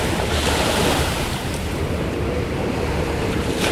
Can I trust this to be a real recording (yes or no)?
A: no